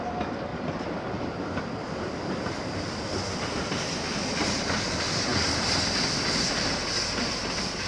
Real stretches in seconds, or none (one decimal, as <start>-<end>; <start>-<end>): 0.0-7.9